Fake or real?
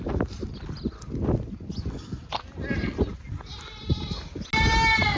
real